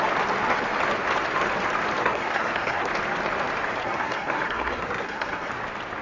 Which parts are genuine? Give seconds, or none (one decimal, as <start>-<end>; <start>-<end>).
0.0-2.0; 2.9-3.8; 5.5-6.0